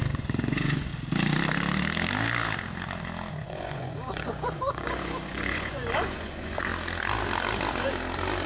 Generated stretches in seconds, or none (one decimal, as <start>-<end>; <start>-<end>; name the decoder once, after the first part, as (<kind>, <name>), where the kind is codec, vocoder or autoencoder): 0.0-0.9 (vocoder, Vocos); 3.3-6.7

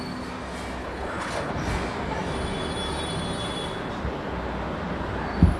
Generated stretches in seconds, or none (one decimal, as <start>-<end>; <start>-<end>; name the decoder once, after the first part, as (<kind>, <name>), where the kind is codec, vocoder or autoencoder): 0.8-1.5 (codec, HILCodec)

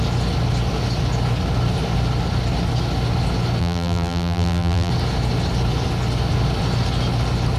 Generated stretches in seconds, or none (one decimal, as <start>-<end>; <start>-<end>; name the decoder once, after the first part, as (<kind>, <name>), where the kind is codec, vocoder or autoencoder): 3.6-4.9 (vocoder, BigVGAN v2)

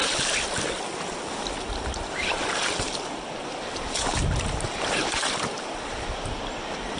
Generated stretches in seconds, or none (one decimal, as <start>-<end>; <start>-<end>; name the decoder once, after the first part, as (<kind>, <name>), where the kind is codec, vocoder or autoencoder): none

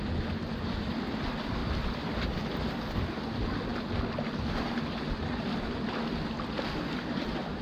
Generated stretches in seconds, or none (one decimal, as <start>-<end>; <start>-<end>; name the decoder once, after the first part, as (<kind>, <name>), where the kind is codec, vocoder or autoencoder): none

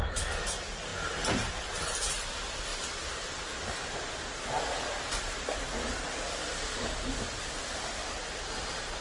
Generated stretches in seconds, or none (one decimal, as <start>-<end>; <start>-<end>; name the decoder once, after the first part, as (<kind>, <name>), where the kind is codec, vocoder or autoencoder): 0.0-0.9 (vocoder, BigVGAN v2); 2.1-7.6

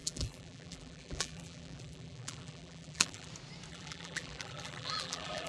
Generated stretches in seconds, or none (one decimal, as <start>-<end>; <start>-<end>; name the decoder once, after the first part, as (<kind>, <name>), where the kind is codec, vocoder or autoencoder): 0.0-3.3 (vocoder, BigVGAN v2); 3.7-5.5

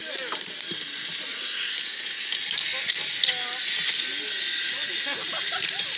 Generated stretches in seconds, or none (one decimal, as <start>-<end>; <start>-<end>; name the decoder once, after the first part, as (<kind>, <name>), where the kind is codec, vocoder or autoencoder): none